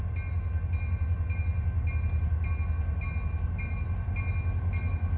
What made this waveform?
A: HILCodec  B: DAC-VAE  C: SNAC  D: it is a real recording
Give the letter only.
D